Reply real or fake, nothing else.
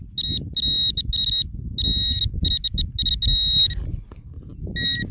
real